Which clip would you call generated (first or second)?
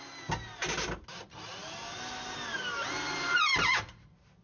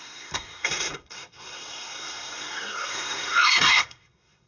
second